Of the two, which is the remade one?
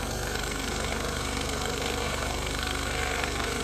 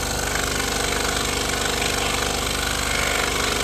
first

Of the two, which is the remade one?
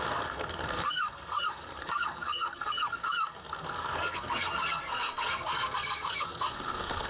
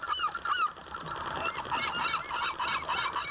first